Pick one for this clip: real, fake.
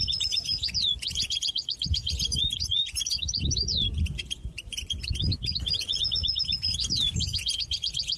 fake